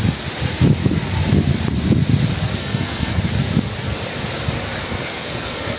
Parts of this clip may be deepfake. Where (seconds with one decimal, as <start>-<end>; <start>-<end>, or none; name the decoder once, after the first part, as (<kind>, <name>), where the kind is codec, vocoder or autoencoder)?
2.6-3.2 (codec, SNAC); 4.8-5.8